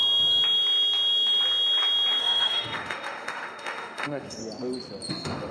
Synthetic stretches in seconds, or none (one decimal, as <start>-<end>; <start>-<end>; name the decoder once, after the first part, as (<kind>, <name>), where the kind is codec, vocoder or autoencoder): 2.2-4.4 (autoencoder, DAC-VAE); 5.1-5.5